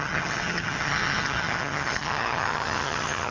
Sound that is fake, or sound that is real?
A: fake